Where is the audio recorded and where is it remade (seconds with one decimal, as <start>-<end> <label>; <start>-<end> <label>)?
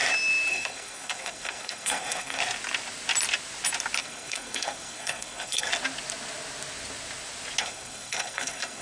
0.0-0.5 recorded; 0.5-2.4 remade; 2.4-4.0 recorded; 4.0-5.7 remade; 5.7-7.6 recorded; 7.6-8.8 remade